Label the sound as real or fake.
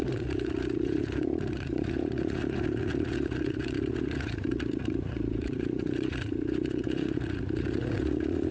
fake